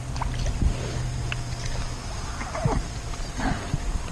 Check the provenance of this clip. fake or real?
real